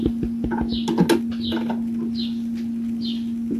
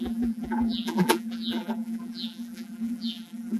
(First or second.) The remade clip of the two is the second